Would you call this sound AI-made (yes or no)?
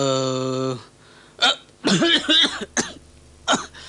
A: no